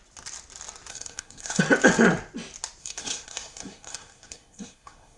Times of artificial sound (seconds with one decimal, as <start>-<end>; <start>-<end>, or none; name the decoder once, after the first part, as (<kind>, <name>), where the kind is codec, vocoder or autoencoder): 0.9-1.6 (codec, SNAC); 2.8-5.2